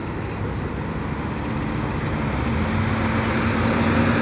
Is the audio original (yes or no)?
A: yes